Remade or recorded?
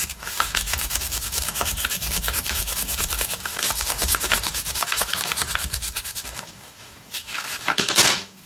remade